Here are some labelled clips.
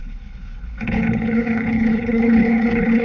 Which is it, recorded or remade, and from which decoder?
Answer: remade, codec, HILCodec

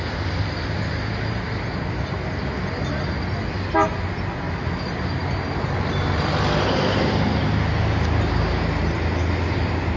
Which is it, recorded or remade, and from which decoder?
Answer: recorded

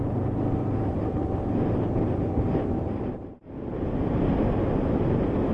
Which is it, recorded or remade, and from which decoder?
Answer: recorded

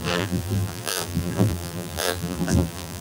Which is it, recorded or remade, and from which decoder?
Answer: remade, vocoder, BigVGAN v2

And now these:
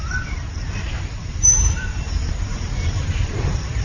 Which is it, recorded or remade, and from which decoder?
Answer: remade, vocoder, BigVGAN v2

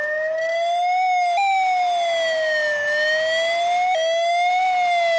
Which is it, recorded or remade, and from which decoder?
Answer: recorded